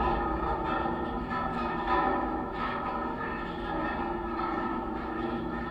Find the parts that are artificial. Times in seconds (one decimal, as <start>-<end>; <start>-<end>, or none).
1.5-2.9; 4.7-5.7